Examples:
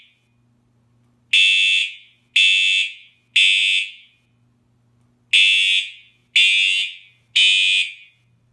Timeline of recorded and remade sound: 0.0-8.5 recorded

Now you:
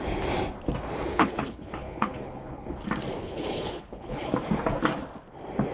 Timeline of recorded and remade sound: 0.0-1.1 recorded; 1.1-2.7 remade; 2.7-3.2 recorded; 3.2-4.3 remade; 4.3-5.7 recorded

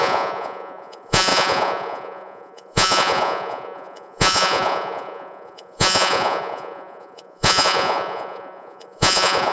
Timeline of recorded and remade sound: 0.0-9.5 remade

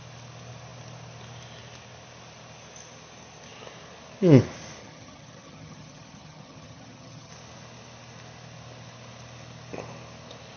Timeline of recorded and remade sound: 0.0-4.8 recorded; 4.8-7.3 remade; 7.3-10.6 recorded

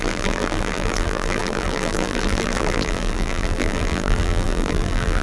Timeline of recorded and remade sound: 0.0-5.2 remade